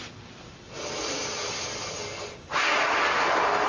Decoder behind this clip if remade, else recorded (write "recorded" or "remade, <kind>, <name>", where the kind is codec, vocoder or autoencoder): recorded